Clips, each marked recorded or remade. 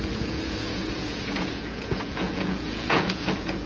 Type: remade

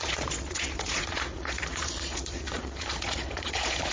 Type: remade